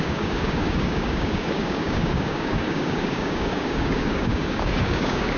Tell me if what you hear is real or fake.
fake